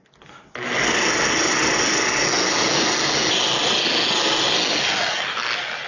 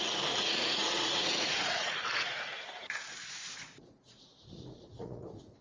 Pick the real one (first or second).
first